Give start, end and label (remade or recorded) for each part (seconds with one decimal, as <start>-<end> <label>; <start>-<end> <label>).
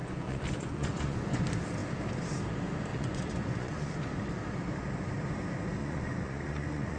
0.0-1.4 remade; 1.4-2.9 recorded; 2.9-3.9 remade; 3.9-5.8 recorded; 5.8-7.0 remade